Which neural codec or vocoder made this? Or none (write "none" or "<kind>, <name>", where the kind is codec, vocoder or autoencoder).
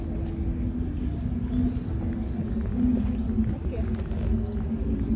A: none